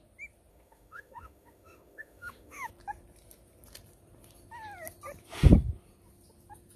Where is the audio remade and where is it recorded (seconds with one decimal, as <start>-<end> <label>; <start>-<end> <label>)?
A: 0.0-0.5 recorded; 0.5-2.7 remade; 2.7-6.8 recorded